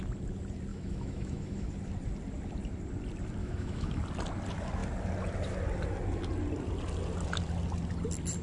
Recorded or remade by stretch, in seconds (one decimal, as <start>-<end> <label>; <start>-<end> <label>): 0.0-0.7 recorded; 0.7-1.7 remade; 1.7-3.4 recorded; 3.4-4.0 remade; 4.0-8.4 recorded